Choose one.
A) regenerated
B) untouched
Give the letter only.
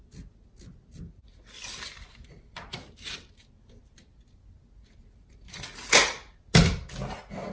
B